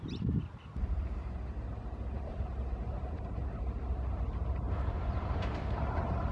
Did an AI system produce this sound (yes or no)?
yes